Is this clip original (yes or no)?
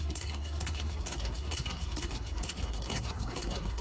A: no